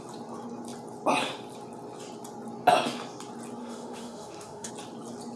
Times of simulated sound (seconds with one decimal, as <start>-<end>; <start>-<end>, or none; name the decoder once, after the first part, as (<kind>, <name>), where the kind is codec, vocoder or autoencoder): 3.6-4.7 (autoencoder, DAC-VAE)